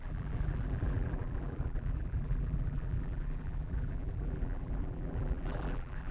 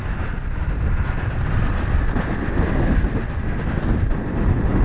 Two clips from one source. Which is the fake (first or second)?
first